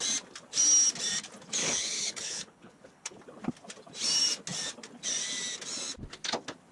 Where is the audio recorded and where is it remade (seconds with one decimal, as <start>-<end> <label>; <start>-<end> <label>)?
0.0-1.6 recorded; 1.6-3.2 remade; 3.2-6.7 recorded